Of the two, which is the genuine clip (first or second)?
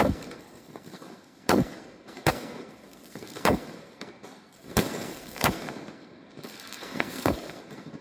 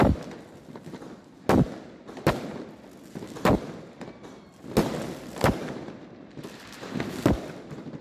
second